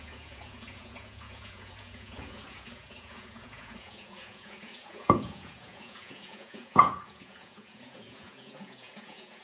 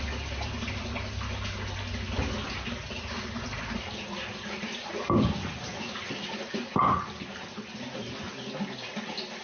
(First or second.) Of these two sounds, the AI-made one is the first